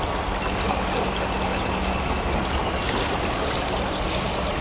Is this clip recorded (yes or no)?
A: yes